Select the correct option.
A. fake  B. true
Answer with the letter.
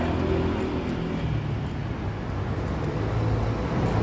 B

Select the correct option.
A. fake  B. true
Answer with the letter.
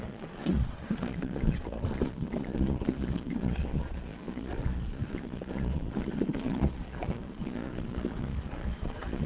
A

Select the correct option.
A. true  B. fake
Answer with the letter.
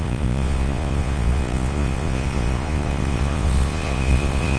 B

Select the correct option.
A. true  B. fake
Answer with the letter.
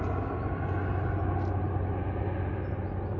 A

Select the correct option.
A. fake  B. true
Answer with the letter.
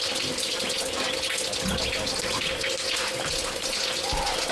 B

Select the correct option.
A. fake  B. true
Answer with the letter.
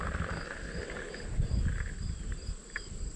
B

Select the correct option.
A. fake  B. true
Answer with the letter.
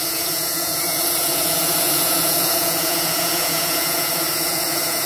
A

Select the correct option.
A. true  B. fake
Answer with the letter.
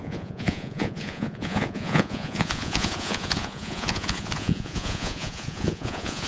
B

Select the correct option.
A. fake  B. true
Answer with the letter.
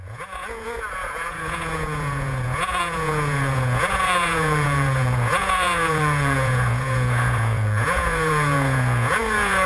A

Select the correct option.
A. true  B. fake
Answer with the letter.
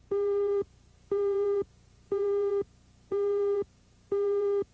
B